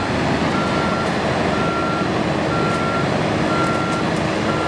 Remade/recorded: recorded